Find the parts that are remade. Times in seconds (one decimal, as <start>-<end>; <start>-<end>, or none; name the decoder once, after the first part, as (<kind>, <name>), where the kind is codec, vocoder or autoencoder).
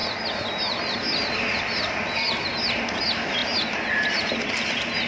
none